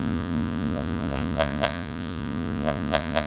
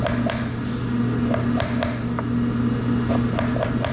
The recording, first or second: second